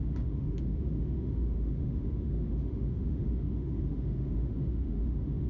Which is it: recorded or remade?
remade